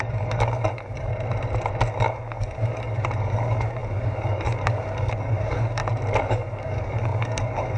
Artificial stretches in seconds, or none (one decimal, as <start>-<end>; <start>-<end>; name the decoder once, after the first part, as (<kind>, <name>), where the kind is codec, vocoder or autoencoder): 0.0-1.1 (codec, DAC); 1.9-5.8; 6.3-7.8